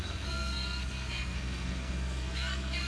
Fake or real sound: fake